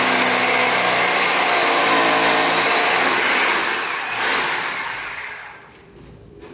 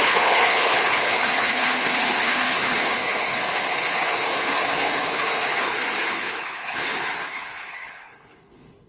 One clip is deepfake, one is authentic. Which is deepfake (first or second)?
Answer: second